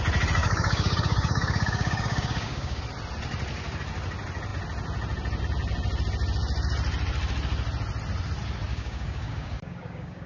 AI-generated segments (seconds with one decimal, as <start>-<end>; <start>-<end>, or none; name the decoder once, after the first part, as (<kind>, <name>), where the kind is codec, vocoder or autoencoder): 0.4-2.8 (codec, DAC); 8.7-10.3